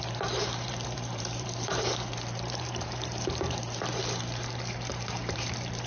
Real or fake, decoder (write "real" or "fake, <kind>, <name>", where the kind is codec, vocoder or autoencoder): fake, vocoder, BigVGAN v2